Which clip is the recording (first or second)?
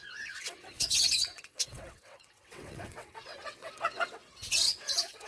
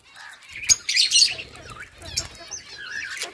second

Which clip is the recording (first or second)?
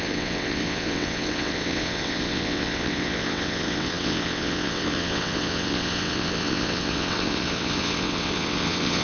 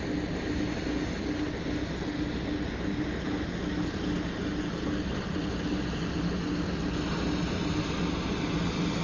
second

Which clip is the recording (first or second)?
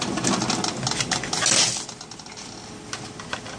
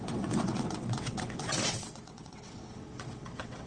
first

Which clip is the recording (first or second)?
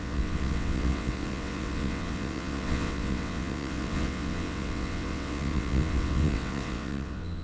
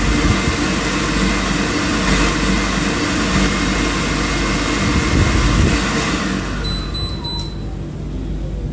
second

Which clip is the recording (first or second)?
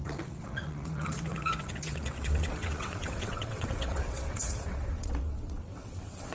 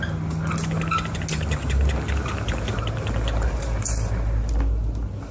second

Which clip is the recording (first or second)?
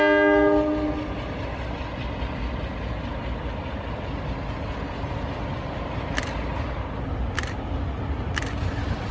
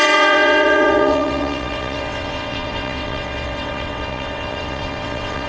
first